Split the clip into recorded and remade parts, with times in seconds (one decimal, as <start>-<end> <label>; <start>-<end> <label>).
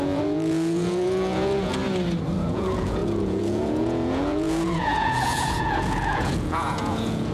0.0-1.8 remade; 1.8-2.4 recorded; 2.4-7.3 remade